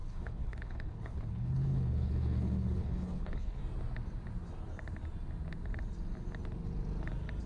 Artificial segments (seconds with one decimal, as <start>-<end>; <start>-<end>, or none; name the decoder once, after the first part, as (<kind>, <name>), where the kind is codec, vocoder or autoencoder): 0.0-3.6 (codec, HILCodec)